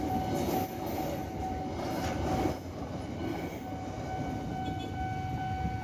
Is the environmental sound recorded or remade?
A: recorded